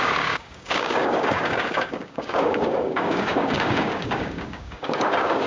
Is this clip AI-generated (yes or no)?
yes